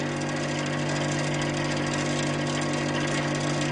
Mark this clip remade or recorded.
recorded